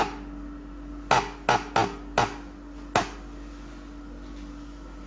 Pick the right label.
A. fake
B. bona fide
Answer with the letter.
B